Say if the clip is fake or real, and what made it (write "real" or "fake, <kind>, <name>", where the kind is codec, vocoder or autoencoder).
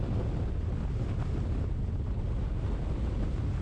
real